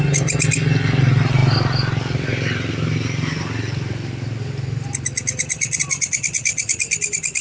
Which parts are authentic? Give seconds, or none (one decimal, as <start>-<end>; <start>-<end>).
0.0-7.4